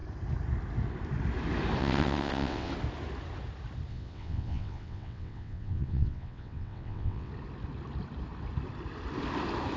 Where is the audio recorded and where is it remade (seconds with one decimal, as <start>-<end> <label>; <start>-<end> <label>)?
0.0-1.8 recorded; 1.8-2.7 remade; 2.7-3.9 recorded; 3.9-7.3 remade; 7.3-9.8 recorded